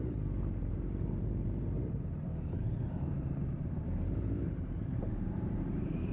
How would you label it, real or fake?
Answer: fake